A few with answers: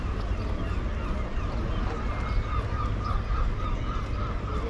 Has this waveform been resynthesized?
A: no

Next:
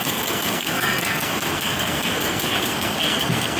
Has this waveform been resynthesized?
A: yes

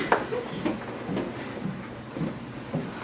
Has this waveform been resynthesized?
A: no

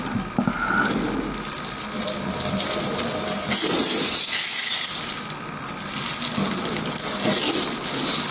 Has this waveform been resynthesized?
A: no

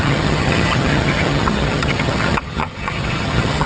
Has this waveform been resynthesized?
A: yes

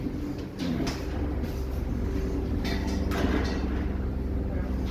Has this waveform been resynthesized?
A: no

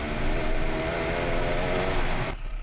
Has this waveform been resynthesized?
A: no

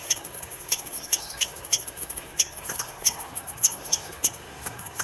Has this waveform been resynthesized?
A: yes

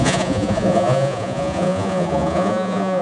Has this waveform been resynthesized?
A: yes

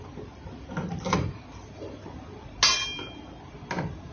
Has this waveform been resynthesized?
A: no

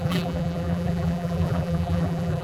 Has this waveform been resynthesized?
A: yes